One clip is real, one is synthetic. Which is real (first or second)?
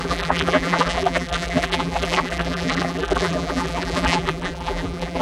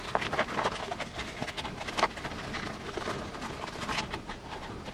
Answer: second